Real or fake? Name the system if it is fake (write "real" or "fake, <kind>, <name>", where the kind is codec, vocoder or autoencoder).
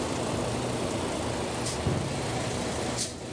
real